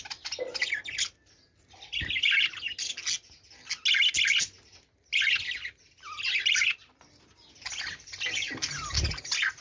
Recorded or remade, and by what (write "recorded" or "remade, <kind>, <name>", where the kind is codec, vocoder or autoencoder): recorded